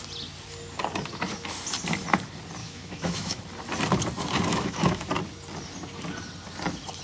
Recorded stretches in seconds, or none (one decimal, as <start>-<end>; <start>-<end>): 0.0-2.6; 3.4-4.5; 5.0-7.0